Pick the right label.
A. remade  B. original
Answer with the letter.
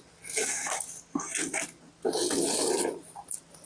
B